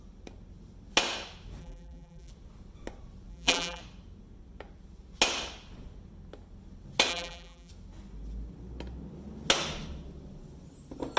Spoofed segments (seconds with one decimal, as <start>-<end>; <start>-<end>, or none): 1.6-2.3; 3.3-3.8; 7.1-7.7